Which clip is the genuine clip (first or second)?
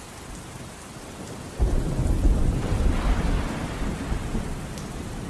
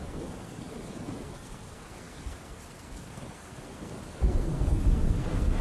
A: first